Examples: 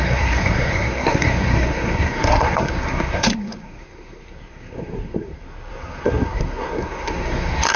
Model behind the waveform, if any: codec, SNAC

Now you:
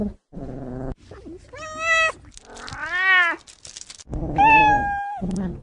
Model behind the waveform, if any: none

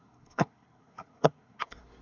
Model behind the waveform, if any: codec, SNAC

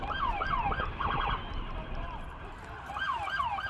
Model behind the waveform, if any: none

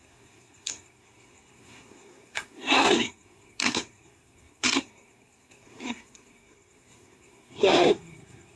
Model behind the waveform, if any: codec, SNAC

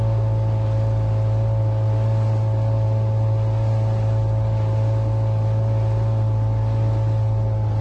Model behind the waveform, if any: none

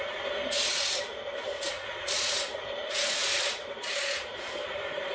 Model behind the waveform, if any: none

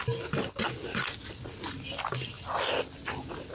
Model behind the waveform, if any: none